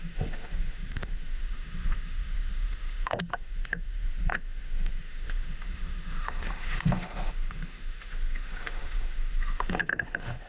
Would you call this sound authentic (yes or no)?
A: no